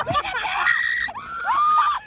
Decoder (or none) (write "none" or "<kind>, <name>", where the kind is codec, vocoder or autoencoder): none